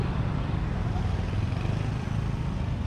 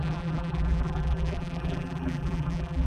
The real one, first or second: first